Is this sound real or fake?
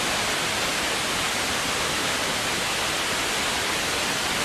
real